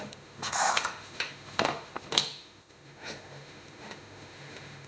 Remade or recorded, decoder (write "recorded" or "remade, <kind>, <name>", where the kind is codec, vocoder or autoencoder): remade, autoencoder, DAC-VAE